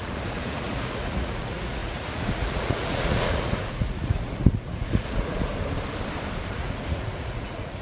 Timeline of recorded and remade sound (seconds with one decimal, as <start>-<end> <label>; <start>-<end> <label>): 0.0-5.5 remade; 5.5-6.5 recorded; 6.5-7.8 remade